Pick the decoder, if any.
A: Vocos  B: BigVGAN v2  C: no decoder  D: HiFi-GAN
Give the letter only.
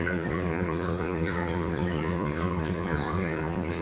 A